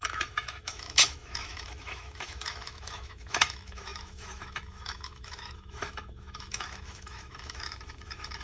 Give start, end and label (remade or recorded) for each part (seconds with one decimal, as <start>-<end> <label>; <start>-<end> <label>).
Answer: 0.0-8.4 remade